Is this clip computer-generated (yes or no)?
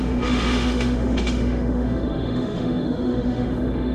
yes